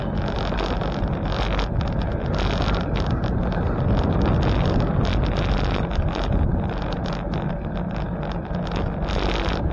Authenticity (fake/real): real